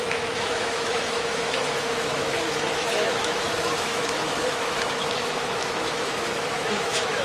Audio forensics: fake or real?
fake